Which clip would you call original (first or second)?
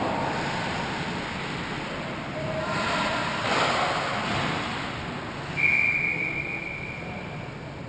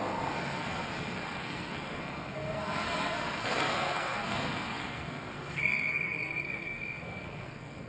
first